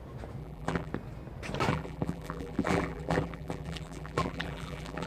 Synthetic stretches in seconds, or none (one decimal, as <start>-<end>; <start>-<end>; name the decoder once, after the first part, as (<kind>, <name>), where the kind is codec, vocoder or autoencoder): 0.4-0.9 (vocoder, BigVGAN v2); 1.7-5.1